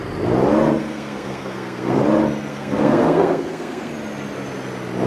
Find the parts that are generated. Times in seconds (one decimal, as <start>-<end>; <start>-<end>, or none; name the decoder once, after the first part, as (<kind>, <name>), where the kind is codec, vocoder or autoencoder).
0.8-2.0 (codec, SNAC); 2.5-3.9